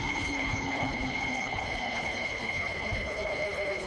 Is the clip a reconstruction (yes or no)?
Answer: yes